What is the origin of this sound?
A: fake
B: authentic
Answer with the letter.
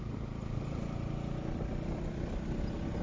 B